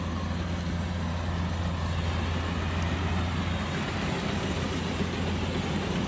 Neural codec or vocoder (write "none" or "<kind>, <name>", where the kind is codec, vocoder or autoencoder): none